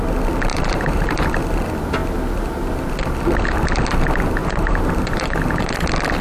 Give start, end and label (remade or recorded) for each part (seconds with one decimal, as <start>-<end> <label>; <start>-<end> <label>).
0.0-0.5 recorded; 0.5-1.4 remade; 1.4-4.4 recorded; 4.4-5.7 remade; 5.7-6.2 recorded

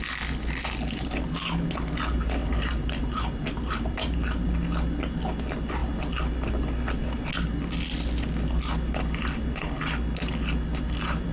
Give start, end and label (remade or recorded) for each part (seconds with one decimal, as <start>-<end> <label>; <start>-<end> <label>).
0.0-2.4 recorded; 2.4-4.5 remade; 4.5-11.3 recorded

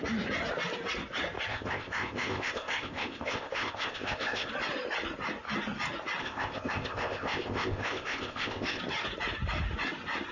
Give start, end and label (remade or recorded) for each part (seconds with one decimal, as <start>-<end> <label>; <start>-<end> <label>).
0.0-1.5 recorded; 1.5-4.5 remade; 4.5-6.2 recorded; 6.2-8.8 remade; 8.8-10.3 recorded

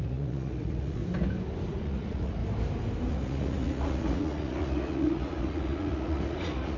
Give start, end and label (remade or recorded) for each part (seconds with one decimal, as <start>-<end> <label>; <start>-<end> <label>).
0.0-1.0 remade; 1.0-1.8 recorded; 1.8-2.4 remade; 2.4-3.1 recorded; 3.1-6.8 remade

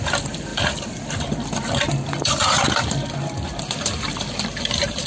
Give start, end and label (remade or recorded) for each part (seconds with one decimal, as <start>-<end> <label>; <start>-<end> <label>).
0.0-5.1 remade